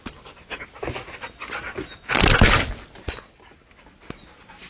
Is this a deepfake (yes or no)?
no